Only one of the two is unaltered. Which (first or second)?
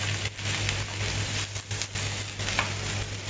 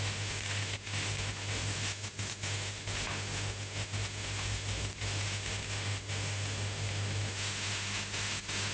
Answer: first